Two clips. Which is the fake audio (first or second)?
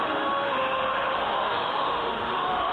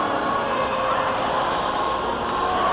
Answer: first